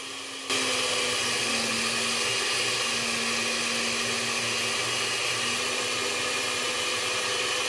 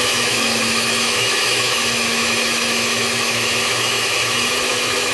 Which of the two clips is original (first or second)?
first